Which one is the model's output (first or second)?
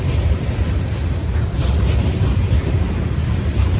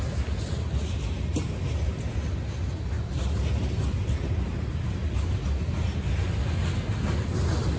first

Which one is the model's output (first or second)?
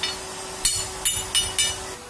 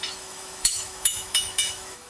second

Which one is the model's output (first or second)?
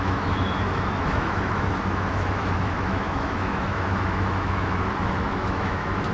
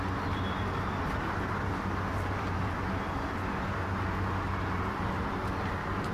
first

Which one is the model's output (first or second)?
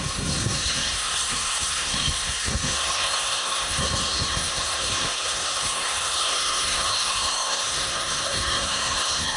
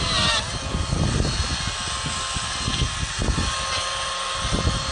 first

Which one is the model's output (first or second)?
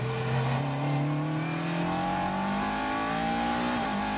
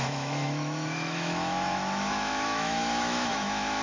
second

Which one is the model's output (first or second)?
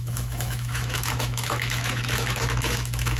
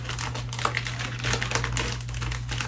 first